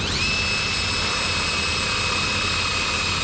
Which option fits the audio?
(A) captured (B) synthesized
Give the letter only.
A